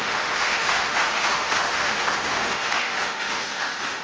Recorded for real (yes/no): no